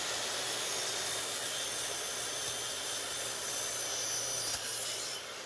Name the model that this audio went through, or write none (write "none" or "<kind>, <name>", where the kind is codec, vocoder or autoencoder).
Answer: vocoder, BigVGAN v2